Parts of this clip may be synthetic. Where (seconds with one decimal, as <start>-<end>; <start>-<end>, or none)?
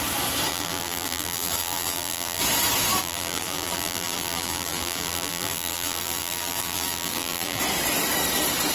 0.5-2.4; 3.0-7.6